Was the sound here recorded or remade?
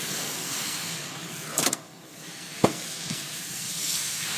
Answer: remade